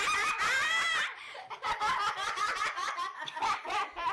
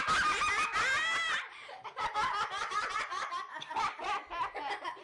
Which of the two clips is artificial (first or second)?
first